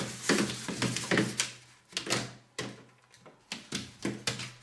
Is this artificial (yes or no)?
no